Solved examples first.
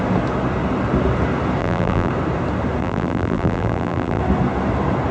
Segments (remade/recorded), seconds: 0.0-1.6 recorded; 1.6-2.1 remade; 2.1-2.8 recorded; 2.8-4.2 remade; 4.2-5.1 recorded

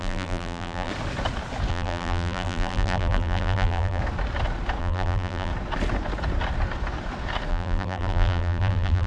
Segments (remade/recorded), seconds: 0.0-0.9 remade; 0.9-1.7 recorded; 1.7-4.0 remade; 4.0-4.8 recorded; 4.8-5.5 remade; 5.5-7.5 recorded; 7.5-9.1 remade

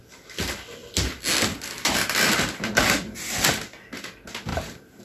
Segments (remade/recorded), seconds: 0.0-4.5 recorded; 4.5-5.0 remade

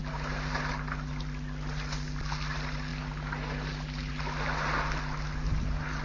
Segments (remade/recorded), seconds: 0.0-6.0 recorded